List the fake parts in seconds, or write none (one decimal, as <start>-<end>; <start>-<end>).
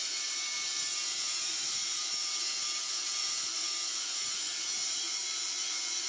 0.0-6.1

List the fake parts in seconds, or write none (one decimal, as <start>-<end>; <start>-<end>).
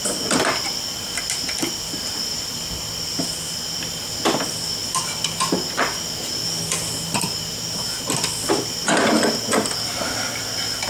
none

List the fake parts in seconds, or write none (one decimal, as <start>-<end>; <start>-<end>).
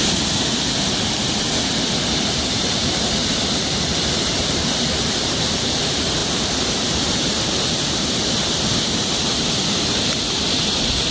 0.0-11.1